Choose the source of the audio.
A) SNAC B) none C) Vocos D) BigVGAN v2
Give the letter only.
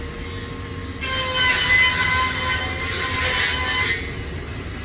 B